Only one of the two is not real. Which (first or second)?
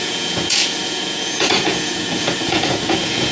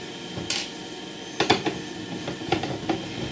first